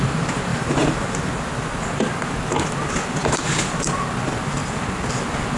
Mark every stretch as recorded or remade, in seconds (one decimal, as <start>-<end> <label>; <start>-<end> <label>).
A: 0.0-0.5 recorded; 0.5-1.3 remade; 1.3-5.6 recorded